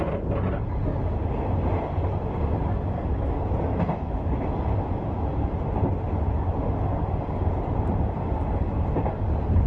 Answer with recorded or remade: recorded